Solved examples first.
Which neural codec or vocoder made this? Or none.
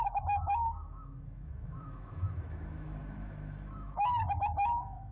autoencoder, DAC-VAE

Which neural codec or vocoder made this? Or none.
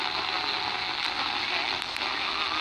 none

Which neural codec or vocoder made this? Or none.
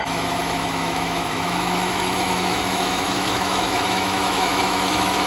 autoencoder, DAC-VAE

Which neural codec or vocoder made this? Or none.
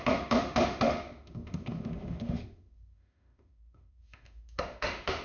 autoencoder, DAC-VAE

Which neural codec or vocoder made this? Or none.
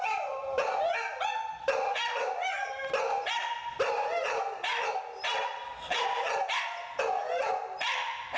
none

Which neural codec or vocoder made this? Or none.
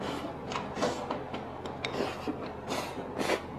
none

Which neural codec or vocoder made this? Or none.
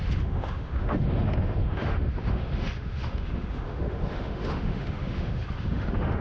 autoencoder, DAC-VAE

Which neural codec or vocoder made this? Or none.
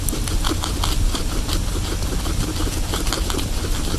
none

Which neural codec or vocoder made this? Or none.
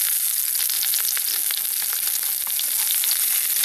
none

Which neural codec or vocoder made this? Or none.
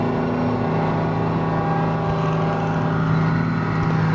none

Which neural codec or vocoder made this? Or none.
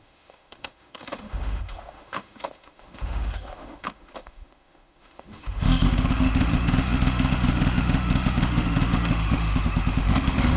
autoencoder, DAC-VAE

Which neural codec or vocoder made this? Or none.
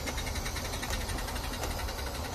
none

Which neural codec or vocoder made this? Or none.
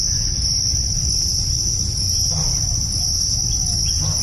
none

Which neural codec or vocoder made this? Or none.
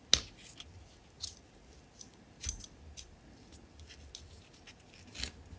none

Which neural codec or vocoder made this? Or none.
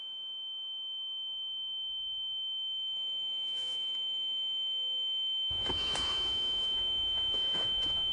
autoencoder, DAC-VAE